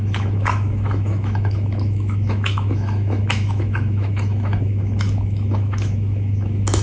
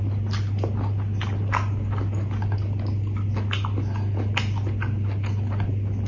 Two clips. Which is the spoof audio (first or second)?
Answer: first